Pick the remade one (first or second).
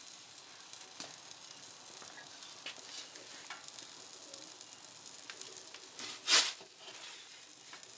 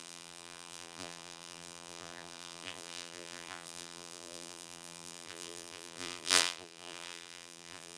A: second